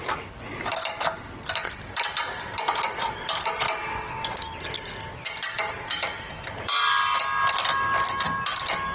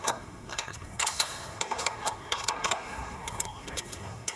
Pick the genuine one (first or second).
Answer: first